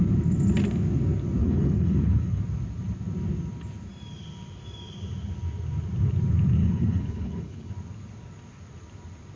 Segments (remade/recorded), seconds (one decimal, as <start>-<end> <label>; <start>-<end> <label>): 0.0-1.4 recorded; 1.4-2.4 remade; 2.4-6.6 recorded; 6.6-7.7 remade; 7.7-9.4 recorded